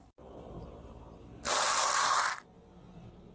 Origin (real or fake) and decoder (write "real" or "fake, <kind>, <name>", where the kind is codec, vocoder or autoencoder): real